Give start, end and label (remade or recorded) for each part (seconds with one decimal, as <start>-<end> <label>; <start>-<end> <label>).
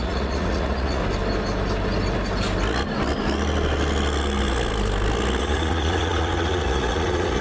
0.0-1.0 remade; 1.0-5.4 recorded; 5.4-7.4 remade